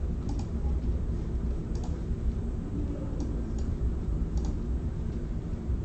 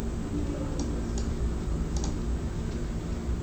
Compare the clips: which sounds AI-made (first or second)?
first